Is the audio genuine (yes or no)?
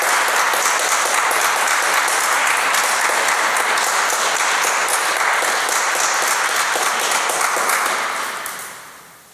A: yes